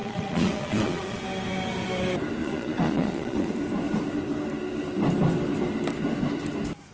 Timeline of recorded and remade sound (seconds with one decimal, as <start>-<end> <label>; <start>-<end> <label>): 0.0-1.2 remade; 1.2-2.4 recorded; 2.4-3.5 remade; 3.5-6.9 recorded